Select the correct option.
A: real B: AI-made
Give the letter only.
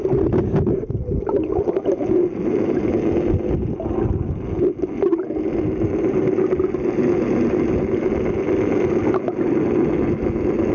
A